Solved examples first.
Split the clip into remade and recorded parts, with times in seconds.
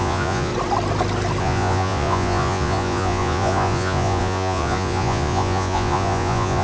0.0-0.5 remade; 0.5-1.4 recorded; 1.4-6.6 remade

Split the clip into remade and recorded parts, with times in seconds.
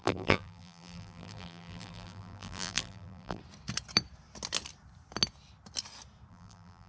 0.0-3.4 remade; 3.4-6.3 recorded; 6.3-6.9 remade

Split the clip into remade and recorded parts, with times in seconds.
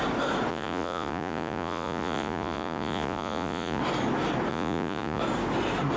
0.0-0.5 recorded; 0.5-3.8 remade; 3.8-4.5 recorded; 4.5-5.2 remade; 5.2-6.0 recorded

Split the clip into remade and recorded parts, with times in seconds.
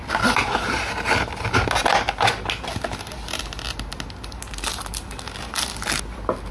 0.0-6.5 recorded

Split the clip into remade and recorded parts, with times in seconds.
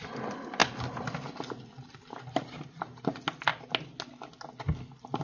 0.0-5.2 recorded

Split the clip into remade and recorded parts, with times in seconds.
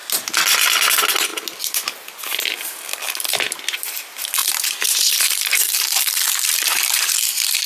0.0-4.4 recorded; 4.4-6.4 remade; 6.4-7.7 recorded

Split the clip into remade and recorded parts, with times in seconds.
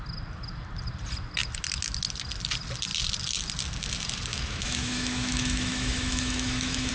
0.0-4.3 recorded; 4.3-6.9 remade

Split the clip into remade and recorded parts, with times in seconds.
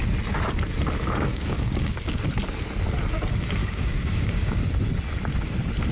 0.0-1.3 recorded; 1.3-2.2 remade; 2.2-3.6 recorded; 3.6-4.6 remade; 4.6-5.9 recorded